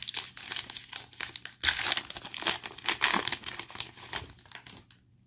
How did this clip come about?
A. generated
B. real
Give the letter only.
B